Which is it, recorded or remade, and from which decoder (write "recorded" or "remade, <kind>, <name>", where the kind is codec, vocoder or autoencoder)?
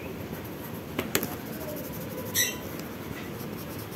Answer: recorded